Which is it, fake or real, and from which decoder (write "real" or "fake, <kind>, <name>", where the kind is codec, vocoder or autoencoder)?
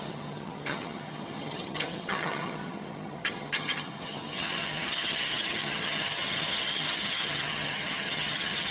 fake, vocoder, HiFi-GAN